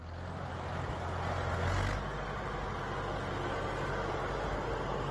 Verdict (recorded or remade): recorded